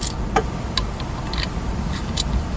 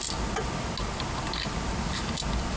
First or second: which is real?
second